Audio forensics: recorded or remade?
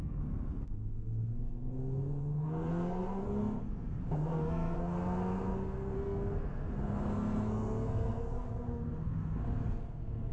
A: remade